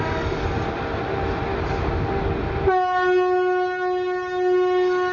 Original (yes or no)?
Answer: yes